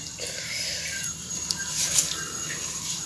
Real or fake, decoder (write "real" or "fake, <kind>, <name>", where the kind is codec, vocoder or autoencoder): fake, vocoder, BigVGAN v2